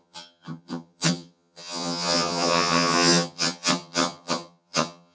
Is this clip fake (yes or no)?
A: yes